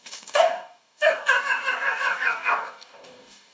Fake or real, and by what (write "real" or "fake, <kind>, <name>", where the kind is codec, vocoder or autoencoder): fake, codec, DAC